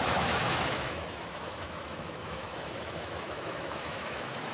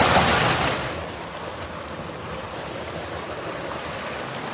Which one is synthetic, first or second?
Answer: first